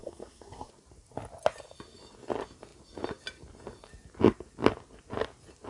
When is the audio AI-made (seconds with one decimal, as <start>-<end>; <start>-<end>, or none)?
0.0-0.7